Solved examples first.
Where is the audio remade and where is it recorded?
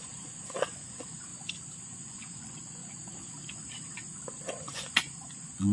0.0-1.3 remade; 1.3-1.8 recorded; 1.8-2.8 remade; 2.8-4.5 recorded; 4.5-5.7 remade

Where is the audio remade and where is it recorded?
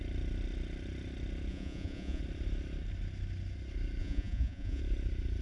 0.0-1.5 recorded; 1.5-2.2 remade; 2.2-4.0 recorded; 4.0-4.8 remade; 4.8-5.4 recorded